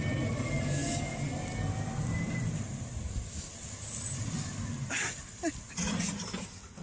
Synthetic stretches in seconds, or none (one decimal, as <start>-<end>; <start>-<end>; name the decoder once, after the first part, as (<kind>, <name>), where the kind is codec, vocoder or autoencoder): none